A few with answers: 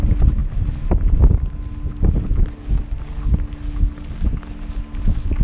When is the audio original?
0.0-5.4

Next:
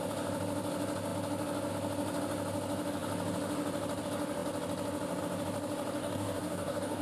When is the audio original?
0.0-6.0

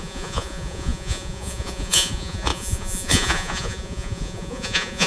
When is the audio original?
none

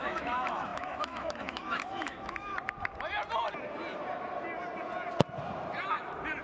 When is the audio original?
2.5-6.4

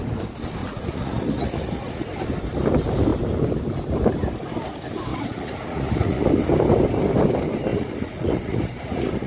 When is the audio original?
0.0-0.6; 2.2-5.1; 6.3-7.7

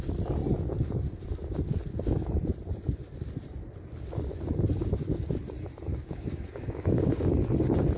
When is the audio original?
0.0-5.9; 7.3-8.0